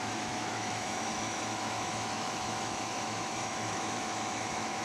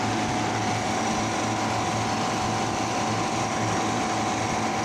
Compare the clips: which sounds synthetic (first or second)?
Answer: first